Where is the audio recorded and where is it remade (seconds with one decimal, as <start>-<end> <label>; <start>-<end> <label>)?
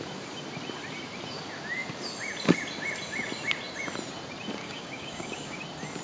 0.0-4.6 recorded; 4.6-5.6 remade; 5.6-6.0 recorded